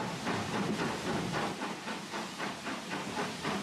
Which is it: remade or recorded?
recorded